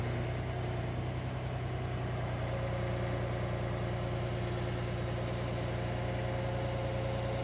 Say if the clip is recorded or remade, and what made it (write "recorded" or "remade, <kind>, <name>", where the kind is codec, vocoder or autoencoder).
recorded